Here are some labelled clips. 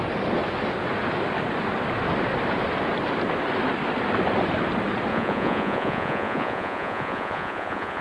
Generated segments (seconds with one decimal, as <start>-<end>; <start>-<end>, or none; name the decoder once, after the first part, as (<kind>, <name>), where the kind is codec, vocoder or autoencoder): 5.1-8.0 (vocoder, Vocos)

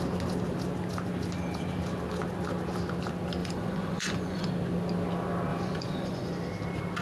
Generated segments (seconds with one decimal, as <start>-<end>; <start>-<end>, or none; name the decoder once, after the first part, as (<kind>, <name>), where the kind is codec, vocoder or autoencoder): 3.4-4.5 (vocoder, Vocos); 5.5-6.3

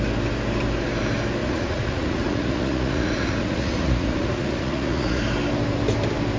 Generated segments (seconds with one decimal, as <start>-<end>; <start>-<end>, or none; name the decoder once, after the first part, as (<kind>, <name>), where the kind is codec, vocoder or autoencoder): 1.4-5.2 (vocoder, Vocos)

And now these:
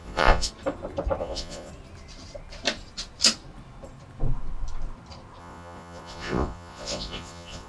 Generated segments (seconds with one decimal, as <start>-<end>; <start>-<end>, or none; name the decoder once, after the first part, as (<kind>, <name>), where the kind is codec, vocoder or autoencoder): 0.0-0.5 (vocoder, Vocos); 1.2-1.7; 5.4-7.7

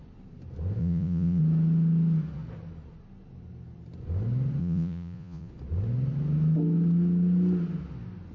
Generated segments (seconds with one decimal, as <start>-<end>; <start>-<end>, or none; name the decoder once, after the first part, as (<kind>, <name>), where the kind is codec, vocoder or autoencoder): 0.8-1.4 (vocoder, Vocos); 4.6-5.5

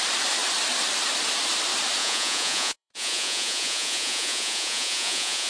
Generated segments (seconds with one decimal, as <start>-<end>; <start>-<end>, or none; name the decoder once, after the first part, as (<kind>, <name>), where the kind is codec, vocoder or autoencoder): 2.0-5.5 (vocoder, Vocos)